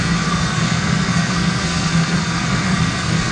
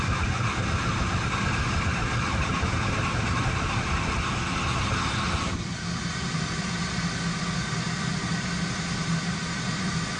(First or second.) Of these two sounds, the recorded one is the second